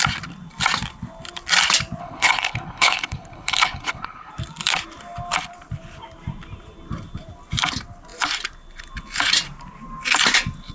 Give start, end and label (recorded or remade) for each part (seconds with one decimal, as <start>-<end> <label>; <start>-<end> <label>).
0.0-2.0 recorded; 2.0-4.3 remade; 4.3-10.7 recorded